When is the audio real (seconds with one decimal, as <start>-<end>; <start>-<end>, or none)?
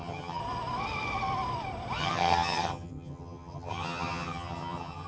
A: 0.4-2.0